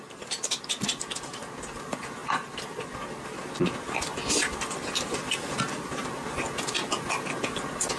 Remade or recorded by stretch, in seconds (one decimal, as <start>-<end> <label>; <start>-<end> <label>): 0.0-8.0 recorded